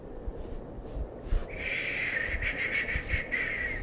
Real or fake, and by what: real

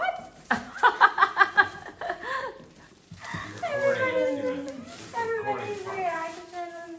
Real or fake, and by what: fake, vocoder, BigVGAN v2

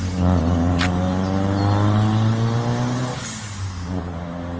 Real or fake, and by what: real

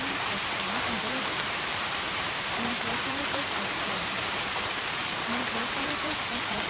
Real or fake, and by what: fake, vocoder, BigVGAN v2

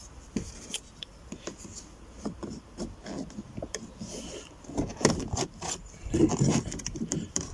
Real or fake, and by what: fake, vocoder, BigVGAN v2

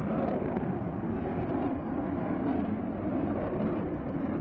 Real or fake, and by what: fake, vocoder, BigVGAN v2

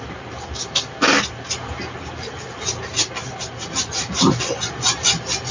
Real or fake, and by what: fake, vocoder, BigVGAN v2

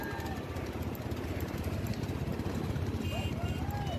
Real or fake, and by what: real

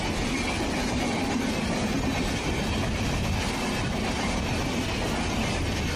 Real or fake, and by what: real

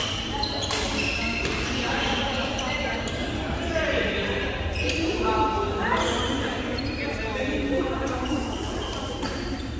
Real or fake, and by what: fake, vocoder, BigVGAN v2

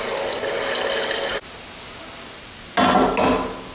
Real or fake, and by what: real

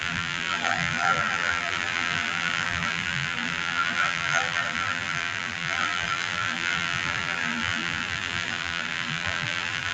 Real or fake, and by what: fake, vocoder, BigVGAN v2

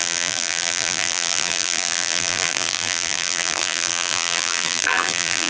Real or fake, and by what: fake, vocoder, BigVGAN v2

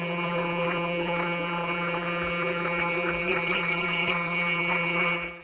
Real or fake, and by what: fake, vocoder, BigVGAN v2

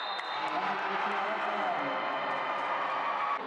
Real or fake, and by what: real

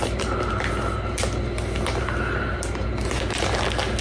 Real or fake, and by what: real